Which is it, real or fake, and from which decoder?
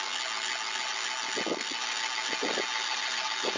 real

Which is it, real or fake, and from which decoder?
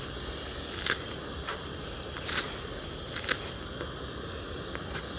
real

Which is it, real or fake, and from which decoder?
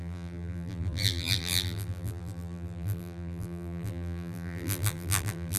fake, vocoder, BigVGAN v2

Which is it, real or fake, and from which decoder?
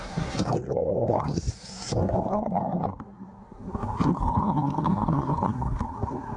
fake, codec, SNAC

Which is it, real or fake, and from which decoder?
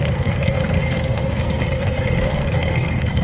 fake, codec, SNAC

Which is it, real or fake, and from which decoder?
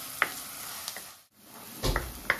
real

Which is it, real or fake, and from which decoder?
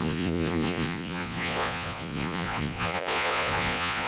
fake, vocoder, Vocos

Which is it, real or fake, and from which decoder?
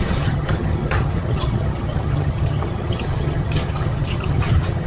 fake, vocoder, HiFi-GAN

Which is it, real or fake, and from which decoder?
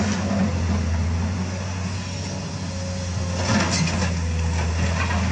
real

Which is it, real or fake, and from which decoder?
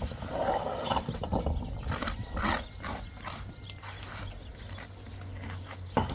real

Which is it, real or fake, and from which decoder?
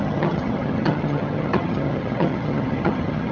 fake, vocoder, HiFi-GAN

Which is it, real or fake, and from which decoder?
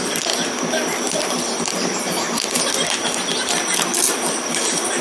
real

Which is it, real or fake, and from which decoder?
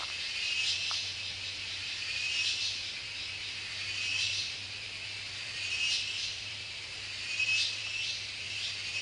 fake, vocoder, BigVGAN v2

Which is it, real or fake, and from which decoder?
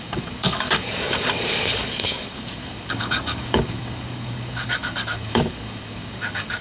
fake, codec, DAC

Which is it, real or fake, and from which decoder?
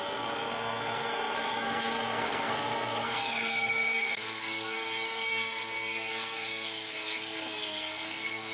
fake, codec, SNAC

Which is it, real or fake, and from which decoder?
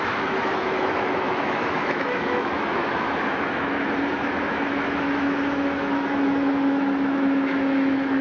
fake, autoencoder, DAC-VAE